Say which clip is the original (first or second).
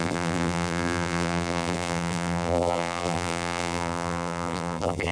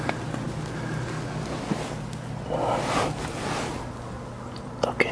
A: second